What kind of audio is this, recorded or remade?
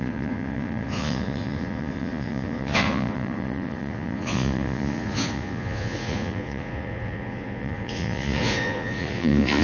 remade